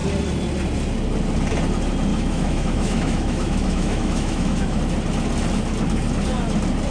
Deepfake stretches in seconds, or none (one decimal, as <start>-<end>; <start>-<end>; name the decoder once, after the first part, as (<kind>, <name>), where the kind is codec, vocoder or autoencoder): 2.1-4.8 (autoencoder, DAC-VAE)